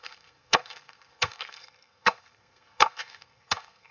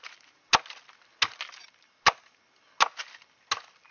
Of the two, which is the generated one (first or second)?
first